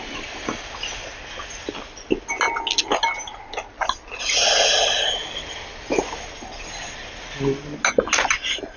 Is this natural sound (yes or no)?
yes